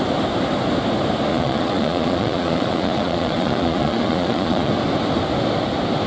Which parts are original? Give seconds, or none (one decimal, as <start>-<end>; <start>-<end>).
0.0-1.3; 4.7-6.1